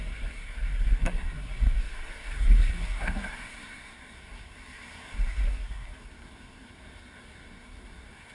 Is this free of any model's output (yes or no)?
no